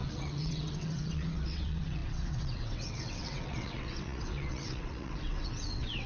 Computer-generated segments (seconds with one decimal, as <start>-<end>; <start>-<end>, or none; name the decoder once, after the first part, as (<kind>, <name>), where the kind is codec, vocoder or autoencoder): 0.0-6.1 (vocoder, WaveNeXt)